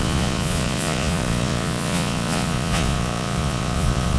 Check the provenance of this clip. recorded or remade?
remade